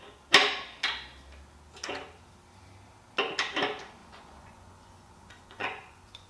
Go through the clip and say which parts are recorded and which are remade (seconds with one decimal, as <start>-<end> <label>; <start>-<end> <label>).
0.0-4.0 recorded; 4.0-6.3 remade